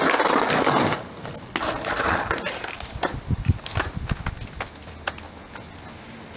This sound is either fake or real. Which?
real